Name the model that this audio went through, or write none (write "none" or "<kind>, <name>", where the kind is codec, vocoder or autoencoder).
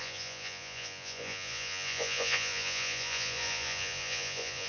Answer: vocoder, Vocos